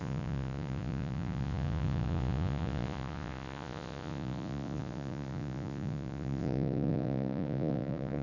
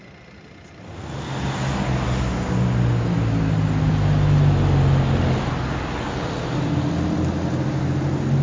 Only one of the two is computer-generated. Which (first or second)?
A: first